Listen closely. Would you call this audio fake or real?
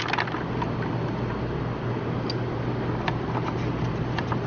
real